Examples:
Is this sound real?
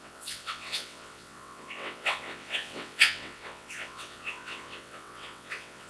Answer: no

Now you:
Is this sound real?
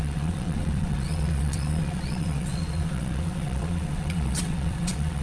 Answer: no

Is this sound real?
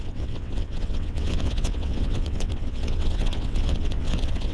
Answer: no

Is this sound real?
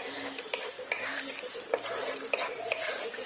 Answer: yes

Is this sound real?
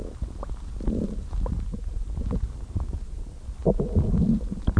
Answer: yes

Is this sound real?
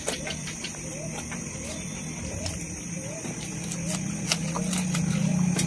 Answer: yes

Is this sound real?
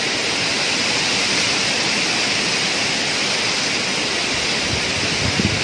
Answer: yes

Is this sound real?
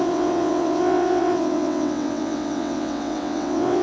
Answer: no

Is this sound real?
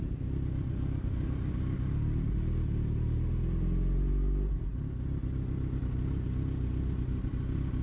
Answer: yes